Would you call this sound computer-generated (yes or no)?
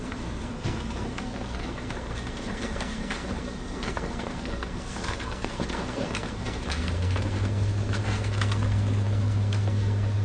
yes